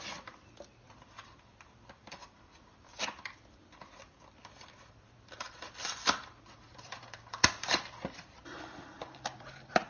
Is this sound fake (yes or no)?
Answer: yes